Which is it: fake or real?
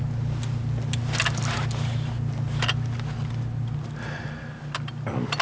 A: real